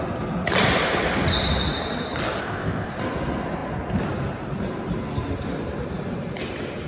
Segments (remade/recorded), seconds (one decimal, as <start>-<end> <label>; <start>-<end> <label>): 0.0-2.4 recorded; 2.4-2.9 remade; 2.9-6.9 recorded

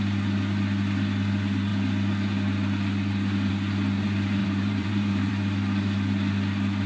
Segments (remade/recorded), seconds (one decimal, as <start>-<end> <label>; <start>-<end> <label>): 0.0-4.4 recorded; 4.4-5.3 remade; 5.3-6.9 recorded

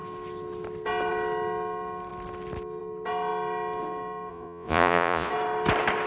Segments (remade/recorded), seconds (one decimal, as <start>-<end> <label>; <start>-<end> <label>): 0.0-4.3 recorded; 4.3-5.3 remade; 5.3-6.1 recorded

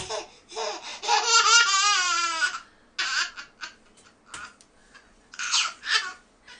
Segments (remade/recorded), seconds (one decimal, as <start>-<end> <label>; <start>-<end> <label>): 0.0-4.8 recorded; 4.8-6.6 remade